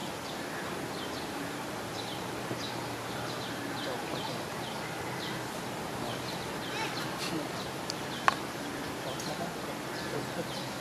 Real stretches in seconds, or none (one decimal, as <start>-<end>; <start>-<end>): none